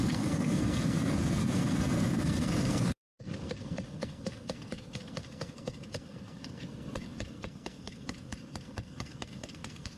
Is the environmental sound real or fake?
fake